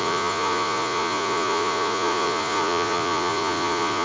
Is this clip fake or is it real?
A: fake